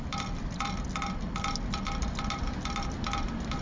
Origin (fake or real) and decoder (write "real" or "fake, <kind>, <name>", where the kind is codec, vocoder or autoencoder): real